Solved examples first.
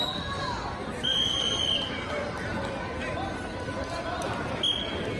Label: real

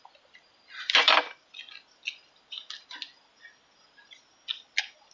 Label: real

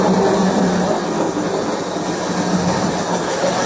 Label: real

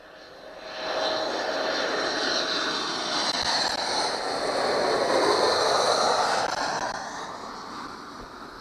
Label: real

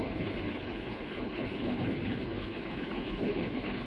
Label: fake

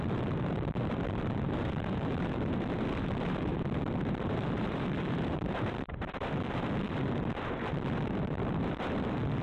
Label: fake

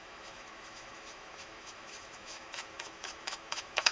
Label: fake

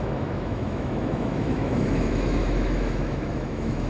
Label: fake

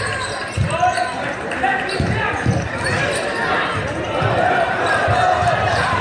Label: real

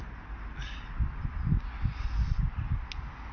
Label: real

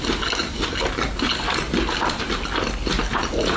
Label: real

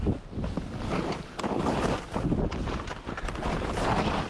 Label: real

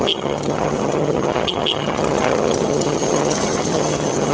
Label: fake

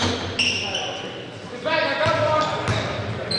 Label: real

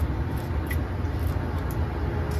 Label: real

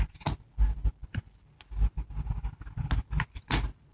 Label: real